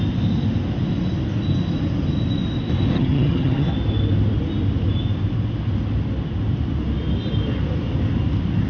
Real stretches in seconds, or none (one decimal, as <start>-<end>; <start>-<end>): 0.0-2.9; 3.7-8.7